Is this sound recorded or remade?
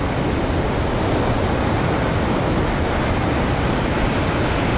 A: recorded